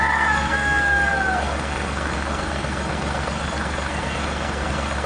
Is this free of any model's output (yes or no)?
no